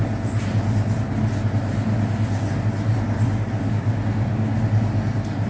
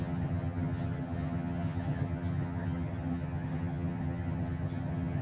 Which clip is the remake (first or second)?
second